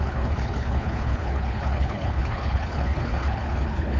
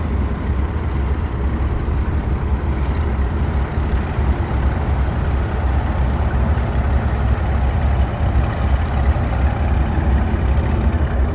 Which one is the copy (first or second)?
first